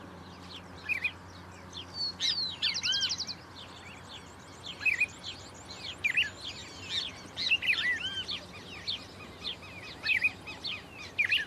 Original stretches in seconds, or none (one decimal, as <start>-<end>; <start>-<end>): 0.0-11.5